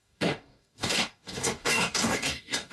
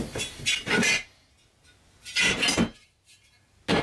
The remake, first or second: first